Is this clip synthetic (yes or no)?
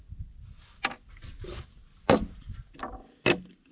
no